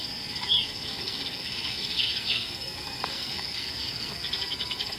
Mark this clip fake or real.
fake